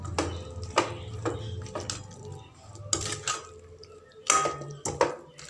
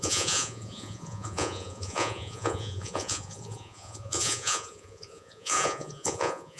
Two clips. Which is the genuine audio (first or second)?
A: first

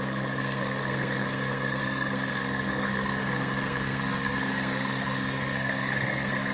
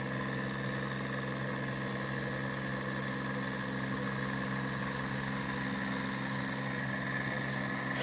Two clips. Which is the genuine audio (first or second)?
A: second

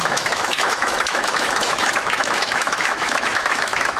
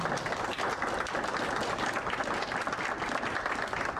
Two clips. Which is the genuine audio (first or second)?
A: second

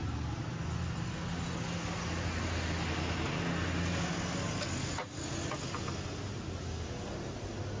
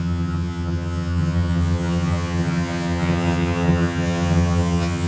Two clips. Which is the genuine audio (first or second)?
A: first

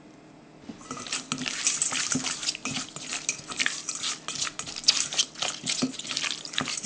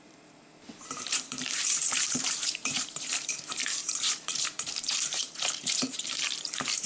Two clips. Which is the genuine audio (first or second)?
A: first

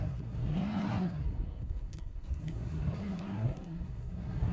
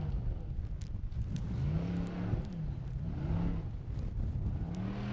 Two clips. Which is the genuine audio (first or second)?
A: second